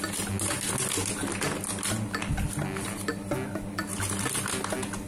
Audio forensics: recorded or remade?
recorded